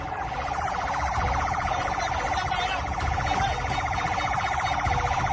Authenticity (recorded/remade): recorded